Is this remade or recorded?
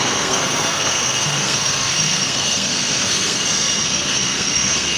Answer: remade